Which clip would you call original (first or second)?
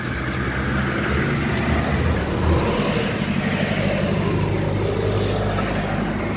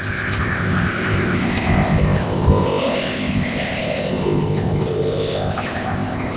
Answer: first